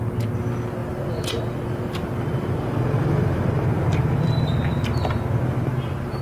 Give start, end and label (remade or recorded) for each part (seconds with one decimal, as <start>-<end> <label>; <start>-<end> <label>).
0.0-0.8 recorded; 0.8-4.5 remade; 4.5-6.2 recorded

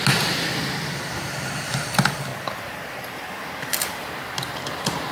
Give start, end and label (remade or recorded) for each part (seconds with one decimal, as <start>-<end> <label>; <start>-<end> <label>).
0.0-5.1 recorded

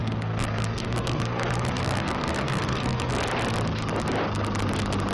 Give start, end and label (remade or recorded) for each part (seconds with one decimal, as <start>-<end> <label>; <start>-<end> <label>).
0.0-3.1 remade; 3.1-5.1 recorded

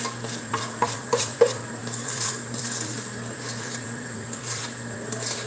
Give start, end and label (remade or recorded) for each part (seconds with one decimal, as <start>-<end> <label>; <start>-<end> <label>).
0.0-5.5 remade